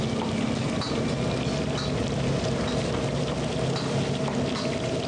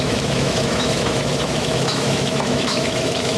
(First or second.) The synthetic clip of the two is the second